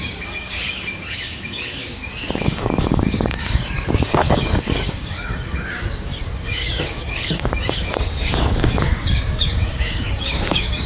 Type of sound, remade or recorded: remade